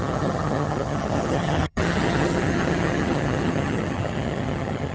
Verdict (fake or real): fake